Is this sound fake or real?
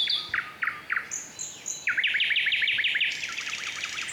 real